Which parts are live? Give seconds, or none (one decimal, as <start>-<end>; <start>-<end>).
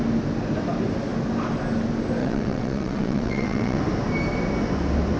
0.0-2.2; 3.8-5.2